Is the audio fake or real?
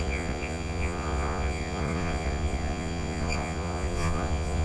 fake